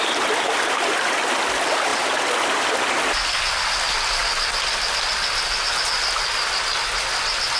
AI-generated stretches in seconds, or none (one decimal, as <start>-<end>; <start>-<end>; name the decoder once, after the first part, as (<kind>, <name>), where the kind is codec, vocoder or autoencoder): none